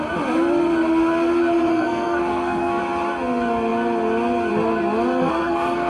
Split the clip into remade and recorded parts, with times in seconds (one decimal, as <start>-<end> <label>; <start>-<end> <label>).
0.0-1.7 recorded; 1.7-2.8 remade; 2.8-5.3 recorded; 5.3-5.9 remade